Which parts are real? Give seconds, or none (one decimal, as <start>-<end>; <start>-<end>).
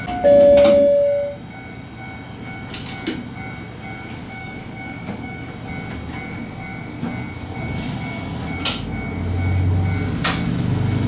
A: 0.0-4.2; 5.5-11.1